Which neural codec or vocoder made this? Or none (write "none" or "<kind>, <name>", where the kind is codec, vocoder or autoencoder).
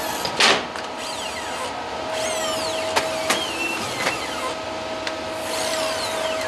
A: none